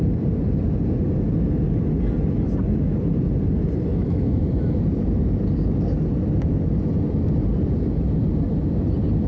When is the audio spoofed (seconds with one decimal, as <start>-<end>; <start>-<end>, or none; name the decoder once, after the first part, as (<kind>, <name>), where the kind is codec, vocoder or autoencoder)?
3.9-4.8 (autoencoder, DAC-VAE)